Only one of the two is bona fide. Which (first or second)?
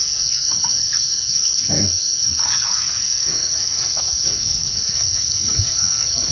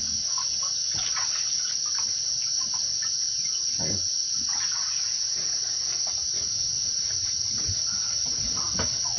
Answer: second